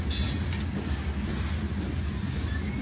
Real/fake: real